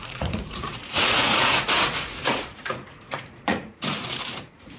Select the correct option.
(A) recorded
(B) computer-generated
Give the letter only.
B